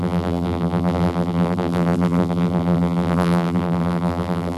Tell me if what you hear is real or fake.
fake